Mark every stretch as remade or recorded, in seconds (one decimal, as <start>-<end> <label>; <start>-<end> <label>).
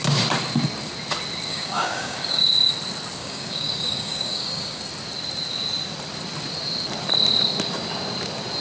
0.0-1.5 recorded; 1.5-2.5 remade; 2.5-3.2 recorded; 3.2-4.8 remade; 4.8-8.6 recorded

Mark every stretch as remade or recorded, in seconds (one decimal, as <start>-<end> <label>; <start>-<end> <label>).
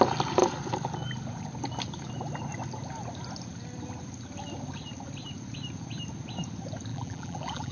0.0-6.9 recorded; 6.9-7.7 remade